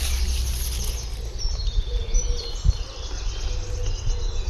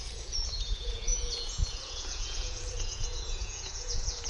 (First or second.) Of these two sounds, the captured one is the first